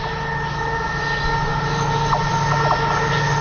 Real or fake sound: real